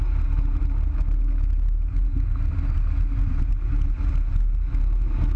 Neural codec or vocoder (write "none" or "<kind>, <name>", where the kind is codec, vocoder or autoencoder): none